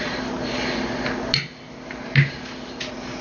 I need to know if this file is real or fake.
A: real